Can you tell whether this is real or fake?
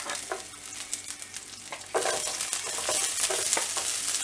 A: real